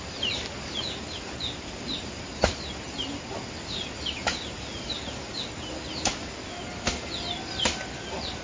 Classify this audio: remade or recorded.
recorded